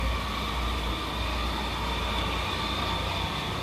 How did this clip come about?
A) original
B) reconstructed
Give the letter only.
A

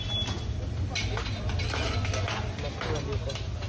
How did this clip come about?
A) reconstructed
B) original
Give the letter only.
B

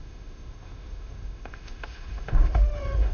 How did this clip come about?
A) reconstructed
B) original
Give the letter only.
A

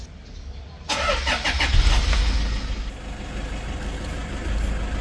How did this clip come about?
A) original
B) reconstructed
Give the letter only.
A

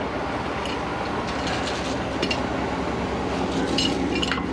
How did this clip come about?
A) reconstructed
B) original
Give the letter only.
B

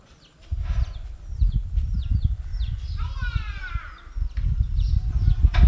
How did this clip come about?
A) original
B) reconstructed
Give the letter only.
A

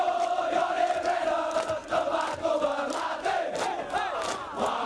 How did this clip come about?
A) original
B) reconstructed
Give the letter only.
A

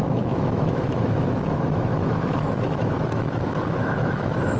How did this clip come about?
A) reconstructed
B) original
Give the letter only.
A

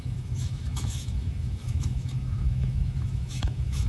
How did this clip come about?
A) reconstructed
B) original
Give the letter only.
A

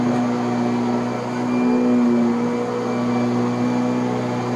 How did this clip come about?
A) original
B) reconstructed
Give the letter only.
A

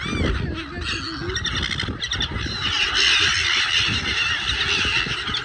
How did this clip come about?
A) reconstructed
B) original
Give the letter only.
B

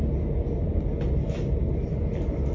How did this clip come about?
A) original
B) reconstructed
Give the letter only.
A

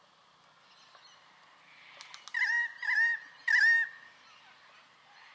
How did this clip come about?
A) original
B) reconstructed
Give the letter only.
A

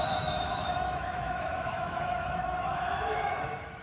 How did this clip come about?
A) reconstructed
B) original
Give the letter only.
A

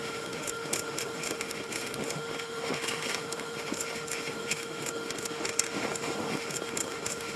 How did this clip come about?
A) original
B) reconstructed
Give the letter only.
B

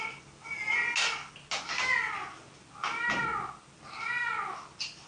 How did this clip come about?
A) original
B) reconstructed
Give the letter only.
A